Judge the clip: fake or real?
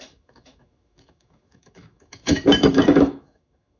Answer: fake